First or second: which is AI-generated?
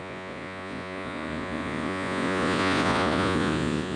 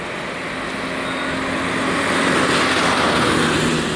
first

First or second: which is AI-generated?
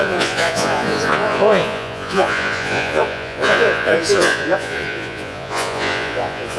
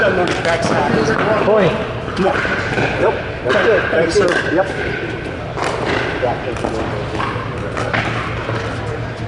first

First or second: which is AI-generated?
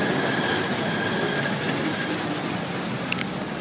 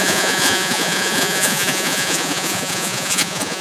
second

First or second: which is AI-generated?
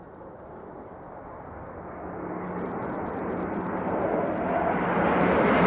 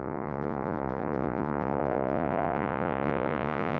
second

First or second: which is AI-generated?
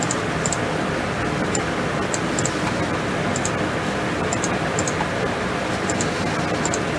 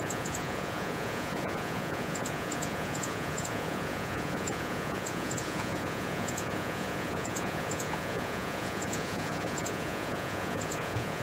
second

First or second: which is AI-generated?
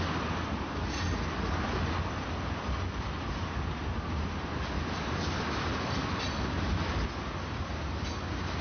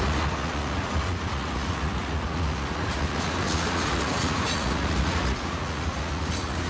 second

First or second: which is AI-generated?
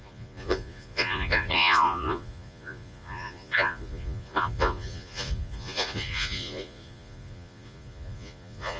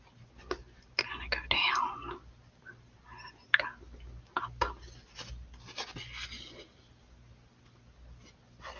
first